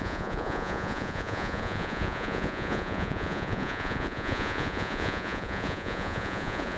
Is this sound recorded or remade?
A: remade